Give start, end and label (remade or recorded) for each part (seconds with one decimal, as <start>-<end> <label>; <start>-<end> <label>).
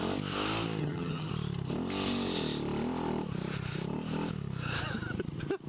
0.0-0.8 recorded; 0.8-1.3 remade; 1.3-5.7 recorded